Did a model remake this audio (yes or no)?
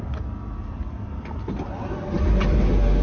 no